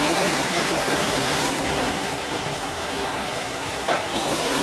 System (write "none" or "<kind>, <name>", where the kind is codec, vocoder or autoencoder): codec, SNAC